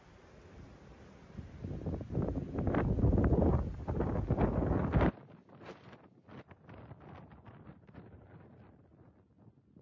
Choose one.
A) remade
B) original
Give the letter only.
B